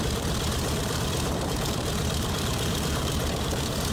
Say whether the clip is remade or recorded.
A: remade